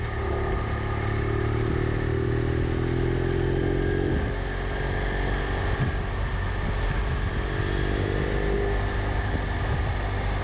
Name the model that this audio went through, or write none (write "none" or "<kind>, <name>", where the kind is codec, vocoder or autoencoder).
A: none